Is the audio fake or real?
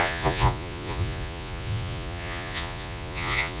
fake